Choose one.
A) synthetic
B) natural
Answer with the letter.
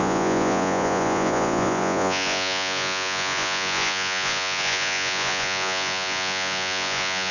A